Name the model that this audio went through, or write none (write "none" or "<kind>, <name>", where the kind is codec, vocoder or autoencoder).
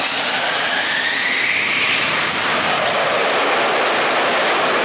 none